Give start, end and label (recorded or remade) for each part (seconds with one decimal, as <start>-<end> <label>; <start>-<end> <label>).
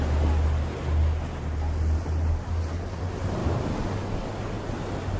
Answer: 0.0-5.2 recorded